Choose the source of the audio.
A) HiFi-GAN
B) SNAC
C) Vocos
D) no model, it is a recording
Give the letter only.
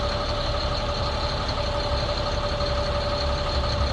D